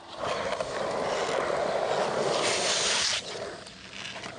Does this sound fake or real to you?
real